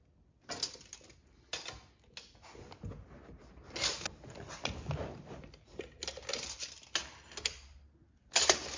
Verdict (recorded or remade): recorded